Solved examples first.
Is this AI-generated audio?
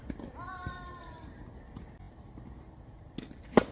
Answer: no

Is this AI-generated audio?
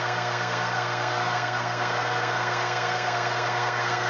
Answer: yes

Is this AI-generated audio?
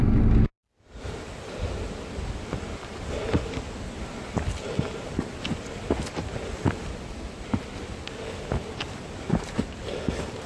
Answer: no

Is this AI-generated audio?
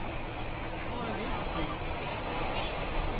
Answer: no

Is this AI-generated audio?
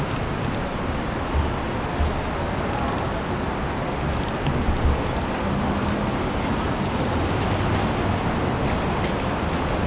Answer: no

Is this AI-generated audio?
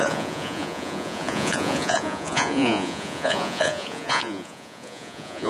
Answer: yes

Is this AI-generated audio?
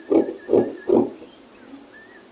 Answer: no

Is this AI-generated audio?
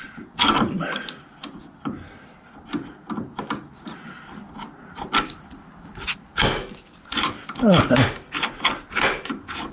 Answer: no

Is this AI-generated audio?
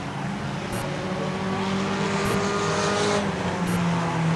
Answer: no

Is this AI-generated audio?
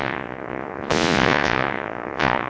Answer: yes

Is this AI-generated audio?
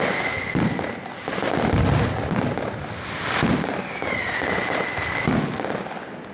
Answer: no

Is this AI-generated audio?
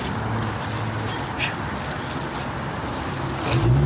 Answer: no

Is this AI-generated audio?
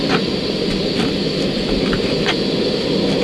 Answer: no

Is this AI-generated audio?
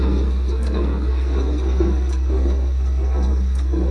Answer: yes